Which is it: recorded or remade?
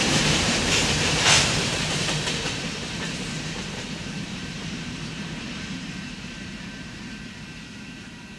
remade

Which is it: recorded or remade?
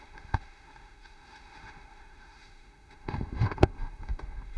remade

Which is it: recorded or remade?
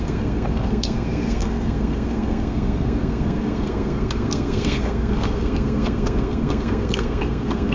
remade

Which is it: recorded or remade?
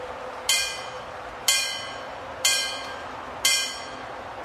recorded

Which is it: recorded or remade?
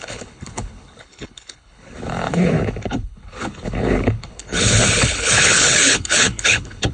remade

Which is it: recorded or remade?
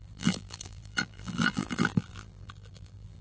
remade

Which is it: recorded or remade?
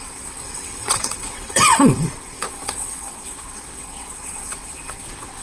remade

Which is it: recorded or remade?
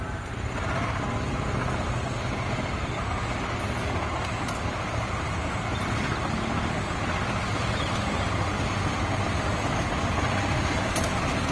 recorded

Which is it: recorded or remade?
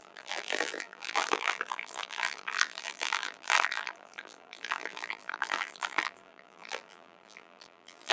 remade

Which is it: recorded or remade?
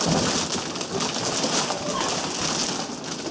recorded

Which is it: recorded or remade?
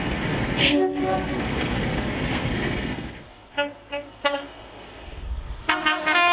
remade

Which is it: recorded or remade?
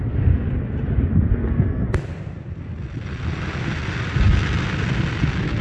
recorded